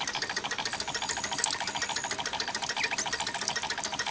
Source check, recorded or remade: recorded